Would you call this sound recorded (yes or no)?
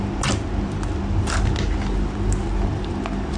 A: yes